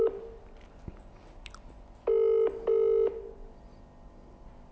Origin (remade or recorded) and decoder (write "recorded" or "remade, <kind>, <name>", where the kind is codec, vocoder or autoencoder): recorded